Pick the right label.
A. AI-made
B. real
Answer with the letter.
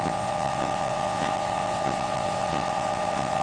A